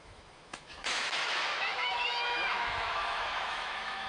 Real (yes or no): no